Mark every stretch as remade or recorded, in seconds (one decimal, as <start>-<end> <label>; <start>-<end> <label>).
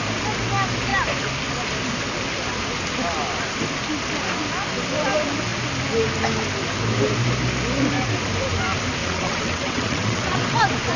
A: 0.0-9.0 recorded; 9.0-10.6 remade; 10.6-11.0 recorded